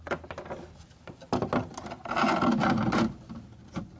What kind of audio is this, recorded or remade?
recorded